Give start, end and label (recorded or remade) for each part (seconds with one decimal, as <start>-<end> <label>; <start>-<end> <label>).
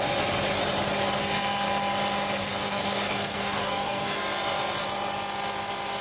0.0-2.4 recorded; 2.4-4.2 remade; 4.2-6.0 recorded